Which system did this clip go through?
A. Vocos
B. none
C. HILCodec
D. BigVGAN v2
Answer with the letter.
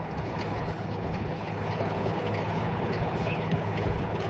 C